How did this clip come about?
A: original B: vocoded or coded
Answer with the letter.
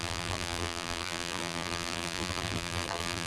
B